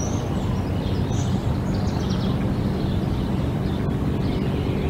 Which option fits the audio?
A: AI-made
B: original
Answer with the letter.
B